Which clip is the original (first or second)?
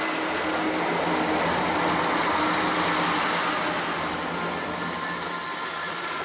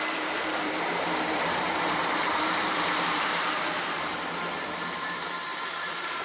first